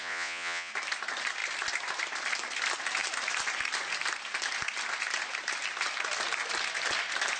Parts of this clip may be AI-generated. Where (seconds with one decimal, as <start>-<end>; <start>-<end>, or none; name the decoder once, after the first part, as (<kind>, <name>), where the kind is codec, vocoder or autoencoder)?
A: 0.0-0.7 (vocoder, Vocos)